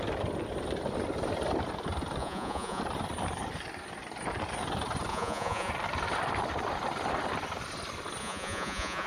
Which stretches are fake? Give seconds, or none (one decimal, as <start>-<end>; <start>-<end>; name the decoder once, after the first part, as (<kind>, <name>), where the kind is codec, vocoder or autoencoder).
2.2-2.8 (vocoder, Vocos); 5.1-5.7; 8.2-9.1